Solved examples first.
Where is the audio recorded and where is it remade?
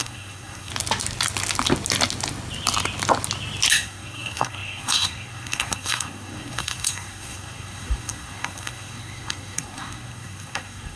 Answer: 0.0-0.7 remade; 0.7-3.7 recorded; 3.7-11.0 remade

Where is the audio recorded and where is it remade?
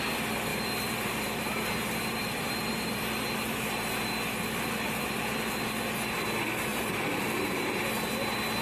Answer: 0.0-0.5 recorded; 0.5-3.0 remade; 3.0-6.7 recorded; 6.7-7.7 remade; 7.7-8.6 recorded